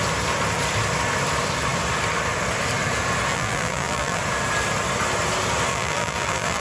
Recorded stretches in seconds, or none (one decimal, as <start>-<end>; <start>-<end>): 0.0-3.3; 4.2-5.7